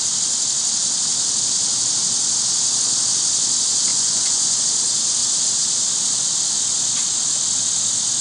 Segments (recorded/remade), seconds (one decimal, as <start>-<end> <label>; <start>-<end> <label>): 0.0-3.9 recorded; 3.9-4.6 remade; 4.6-8.2 recorded